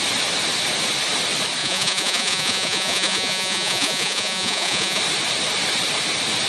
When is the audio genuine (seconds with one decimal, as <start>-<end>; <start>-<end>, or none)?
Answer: 0.0-1.6; 5.0-6.5